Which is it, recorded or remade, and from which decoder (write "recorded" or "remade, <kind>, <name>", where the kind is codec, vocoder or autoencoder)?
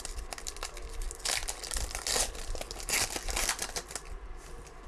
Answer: recorded